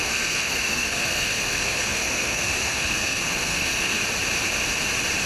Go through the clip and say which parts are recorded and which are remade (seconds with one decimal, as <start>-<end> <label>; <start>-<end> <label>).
0.0-4.0 remade; 4.0-5.3 recorded